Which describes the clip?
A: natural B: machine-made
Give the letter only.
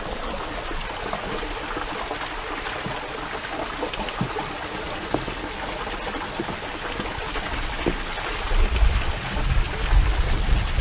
A